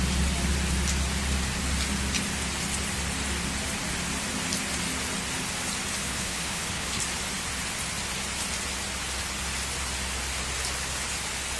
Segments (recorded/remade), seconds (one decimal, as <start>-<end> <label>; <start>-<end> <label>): 0.0-6.0 recorded; 6.0-7.0 remade; 7.0-11.6 recorded